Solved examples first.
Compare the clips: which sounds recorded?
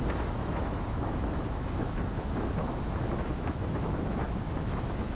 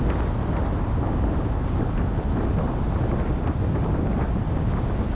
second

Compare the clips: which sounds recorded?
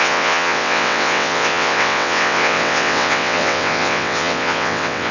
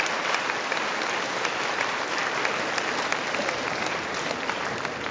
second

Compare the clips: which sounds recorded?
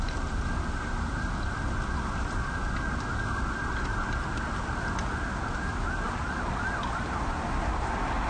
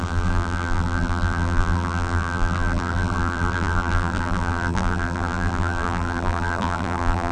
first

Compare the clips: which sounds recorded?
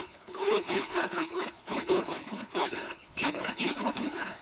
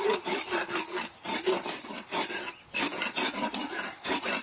second